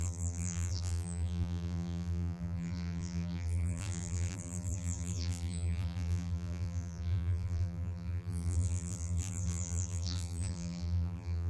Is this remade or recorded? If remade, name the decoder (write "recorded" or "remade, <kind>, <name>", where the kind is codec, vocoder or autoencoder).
remade, vocoder, BigVGAN v2